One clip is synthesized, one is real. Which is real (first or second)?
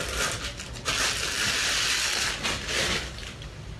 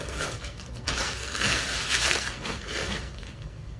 first